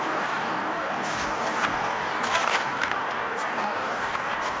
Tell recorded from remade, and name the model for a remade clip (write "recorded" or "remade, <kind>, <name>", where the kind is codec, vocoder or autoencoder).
remade, codec, DAC